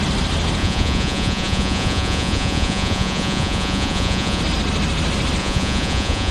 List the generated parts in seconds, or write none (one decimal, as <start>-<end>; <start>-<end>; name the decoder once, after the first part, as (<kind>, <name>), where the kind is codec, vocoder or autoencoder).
0.6-4.4 (vocoder, Vocos); 5.4-6.3